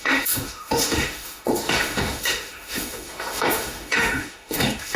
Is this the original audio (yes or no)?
no